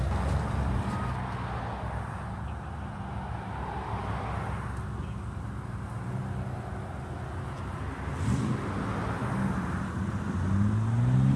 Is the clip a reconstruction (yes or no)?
no